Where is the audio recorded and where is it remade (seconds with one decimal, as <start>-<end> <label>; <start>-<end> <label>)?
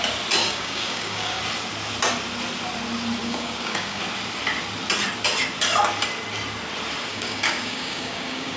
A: 0.0-0.4 recorded; 0.4-1.4 remade; 1.4-3.2 recorded; 3.2-4.0 remade; 4.0-7.1 recorded; 7.1-8.6 remade